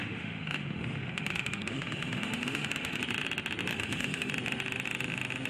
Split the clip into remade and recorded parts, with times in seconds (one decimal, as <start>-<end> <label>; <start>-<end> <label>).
0.0-3.0 remade; 3.0-3.7 recorded; 3.7-4.3 remade; 4.3-5.5 recorded